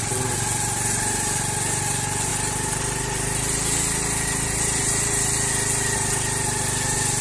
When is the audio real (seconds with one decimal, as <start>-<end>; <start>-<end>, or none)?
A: 0.0-7.2